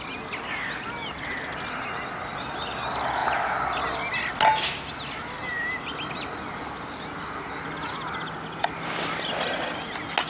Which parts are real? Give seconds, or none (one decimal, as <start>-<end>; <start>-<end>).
0.0-10.3